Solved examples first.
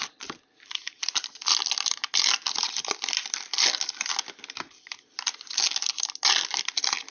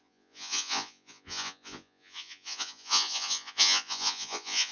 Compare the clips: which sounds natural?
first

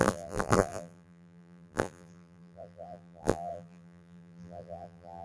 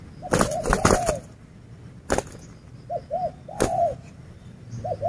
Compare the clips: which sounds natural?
second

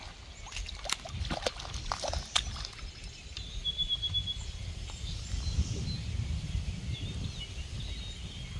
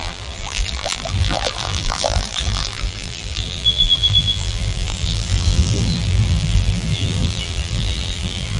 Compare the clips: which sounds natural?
first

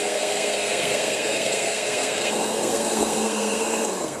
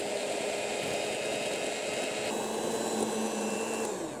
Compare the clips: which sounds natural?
second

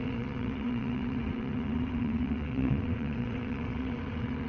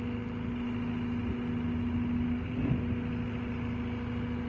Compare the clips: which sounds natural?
second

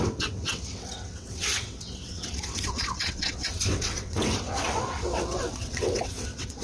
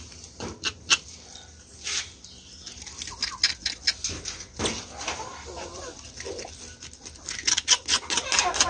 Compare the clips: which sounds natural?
second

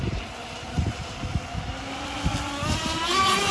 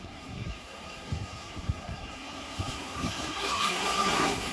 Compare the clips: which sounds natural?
first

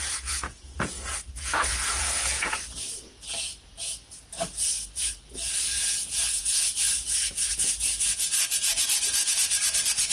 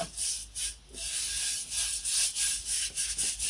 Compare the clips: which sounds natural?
second